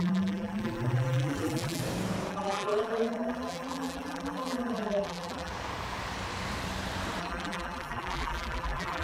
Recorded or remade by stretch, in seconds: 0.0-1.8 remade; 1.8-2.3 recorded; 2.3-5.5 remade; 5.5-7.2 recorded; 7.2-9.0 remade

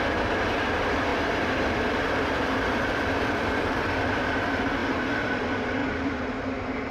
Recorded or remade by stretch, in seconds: 0.0-6.9 remade